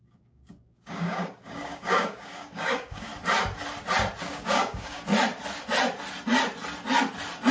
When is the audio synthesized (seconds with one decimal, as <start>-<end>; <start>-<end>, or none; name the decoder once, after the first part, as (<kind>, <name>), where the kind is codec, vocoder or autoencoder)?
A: 0.0-3.1 (codec, DAC); 4.2-5.1